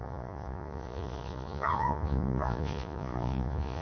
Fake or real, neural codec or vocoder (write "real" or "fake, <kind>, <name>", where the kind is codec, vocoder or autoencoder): fake, vocoder, Vocos